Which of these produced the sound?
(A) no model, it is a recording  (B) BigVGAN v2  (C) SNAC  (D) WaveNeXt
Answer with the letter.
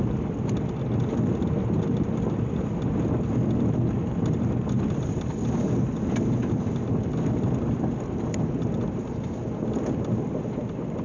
A